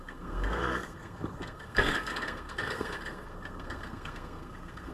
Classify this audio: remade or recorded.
remade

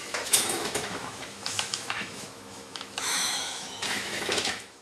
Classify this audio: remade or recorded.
remade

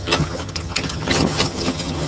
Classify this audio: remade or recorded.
remade